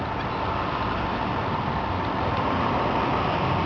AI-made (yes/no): no